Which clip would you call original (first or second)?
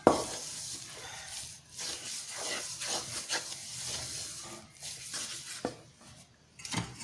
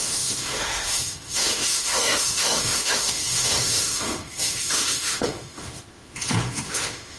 first